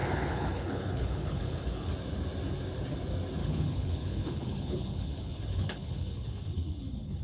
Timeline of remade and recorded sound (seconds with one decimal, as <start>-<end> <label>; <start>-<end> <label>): 0.0-1.9 remade; 1.9-3.4 recorded; 3.4-7.2 remade